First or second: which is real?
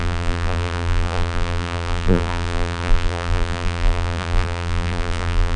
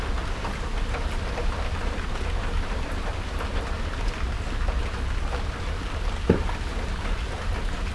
second